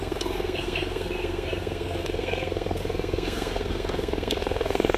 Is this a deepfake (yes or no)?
yes